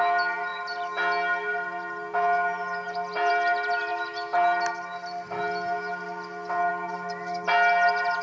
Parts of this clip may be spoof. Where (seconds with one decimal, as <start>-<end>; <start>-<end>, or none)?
none

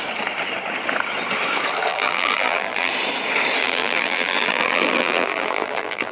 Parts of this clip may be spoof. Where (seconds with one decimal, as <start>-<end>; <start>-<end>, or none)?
1.9-2.9; 3.6-6.1

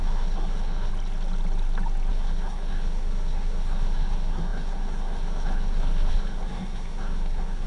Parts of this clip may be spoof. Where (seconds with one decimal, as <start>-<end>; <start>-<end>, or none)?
0.0-0.9; 2.1-7.7

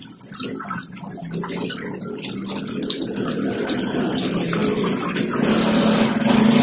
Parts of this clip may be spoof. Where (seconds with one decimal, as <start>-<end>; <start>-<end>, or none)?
none

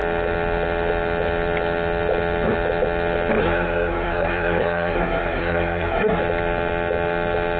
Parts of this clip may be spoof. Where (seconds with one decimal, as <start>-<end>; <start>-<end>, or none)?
3.4-6.2

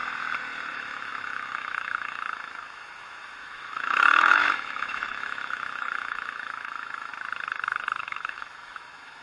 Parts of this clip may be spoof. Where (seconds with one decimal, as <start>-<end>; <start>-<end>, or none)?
0.7-7.1; 8.0-9.2

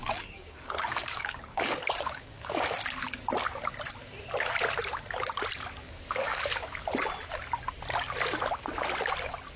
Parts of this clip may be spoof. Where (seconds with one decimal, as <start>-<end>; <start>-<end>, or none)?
0.0-2.8; 5.8-6.4

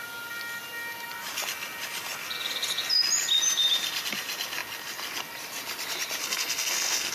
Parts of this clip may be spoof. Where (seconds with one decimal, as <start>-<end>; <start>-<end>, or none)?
6.2-7.1